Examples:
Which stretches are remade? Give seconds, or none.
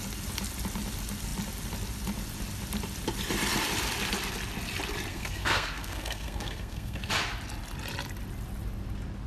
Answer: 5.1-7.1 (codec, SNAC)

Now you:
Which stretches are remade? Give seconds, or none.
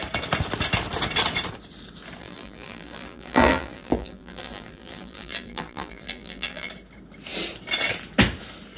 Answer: 2.2-6.7 (vocoder, BigVGAN v2)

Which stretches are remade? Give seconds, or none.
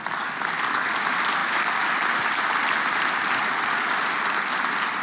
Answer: none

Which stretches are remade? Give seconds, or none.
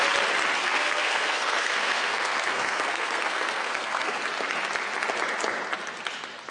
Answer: 0.6-4.2 (codec, SNAC)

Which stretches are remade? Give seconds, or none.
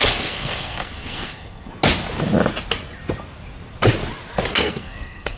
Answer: 0.0-1.7 (codec, SNAC); 4.5-5.4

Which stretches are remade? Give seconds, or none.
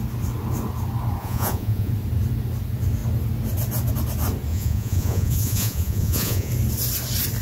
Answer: 1.2-1.9 (vocoder, Vocos); 4.5-6.5